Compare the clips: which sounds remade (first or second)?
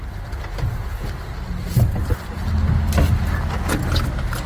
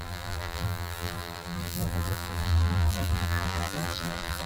second